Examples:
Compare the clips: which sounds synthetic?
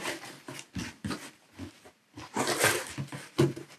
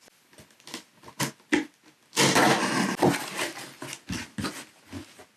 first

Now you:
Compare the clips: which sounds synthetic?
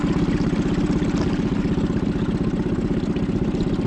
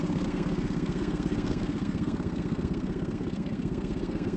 second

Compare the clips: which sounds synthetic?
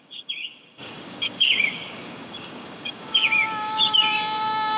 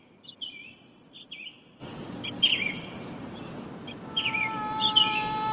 first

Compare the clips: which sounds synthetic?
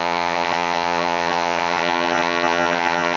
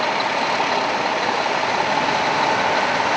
first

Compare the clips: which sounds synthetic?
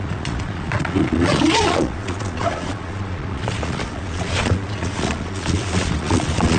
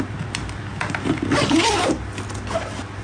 first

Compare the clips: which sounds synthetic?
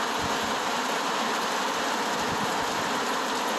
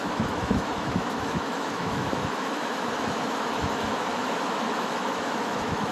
second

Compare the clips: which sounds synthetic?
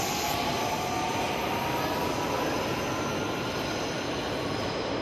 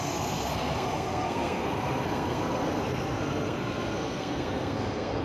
second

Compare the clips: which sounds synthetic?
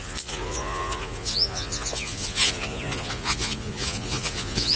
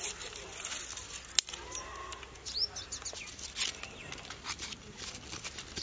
first